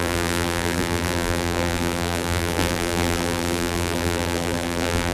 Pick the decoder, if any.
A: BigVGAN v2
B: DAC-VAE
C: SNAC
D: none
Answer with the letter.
A